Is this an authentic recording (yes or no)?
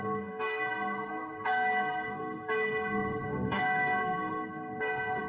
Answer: no